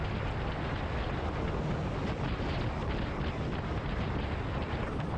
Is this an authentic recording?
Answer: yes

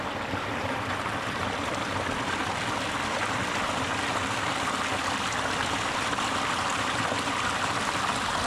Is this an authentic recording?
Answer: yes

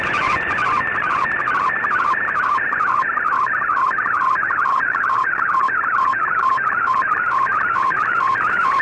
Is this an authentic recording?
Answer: no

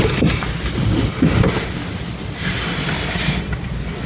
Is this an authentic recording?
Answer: yes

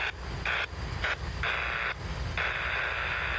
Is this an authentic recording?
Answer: yes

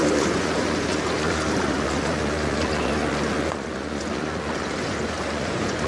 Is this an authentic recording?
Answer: no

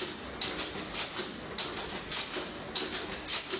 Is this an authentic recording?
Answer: yes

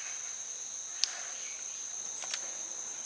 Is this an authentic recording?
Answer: yes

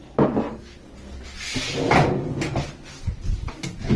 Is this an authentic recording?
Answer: yes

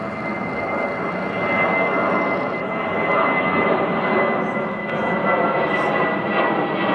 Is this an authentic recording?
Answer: yes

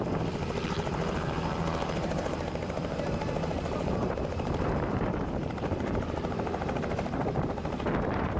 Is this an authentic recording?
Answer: no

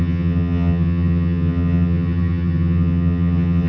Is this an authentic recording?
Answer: no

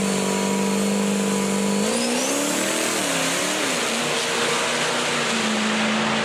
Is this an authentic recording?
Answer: yes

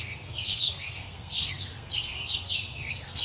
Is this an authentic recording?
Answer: no